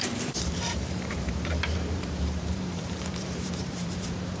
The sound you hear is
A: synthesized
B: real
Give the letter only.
A